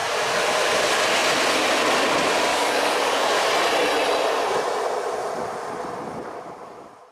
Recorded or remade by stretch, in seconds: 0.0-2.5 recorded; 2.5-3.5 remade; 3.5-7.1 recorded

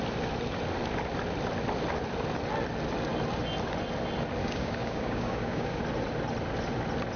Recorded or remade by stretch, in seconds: 0.0-4.4 recorded; 4.4-5.8 remade; 5.8-7.2 recorded

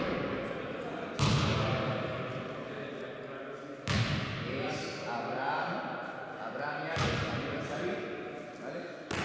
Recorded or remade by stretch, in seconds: 0.0-9.2 recorded

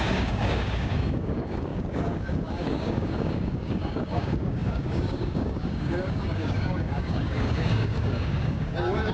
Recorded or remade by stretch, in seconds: 0.0-9.1 remade